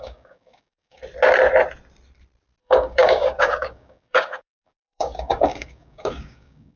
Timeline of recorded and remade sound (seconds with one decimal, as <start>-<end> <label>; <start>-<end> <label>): 0.0-1.0 remade; 1.0-2.6 recorded; 2.6-6.8 remade